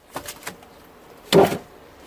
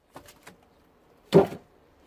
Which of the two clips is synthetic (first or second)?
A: second